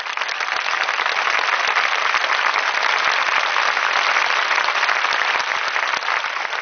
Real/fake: real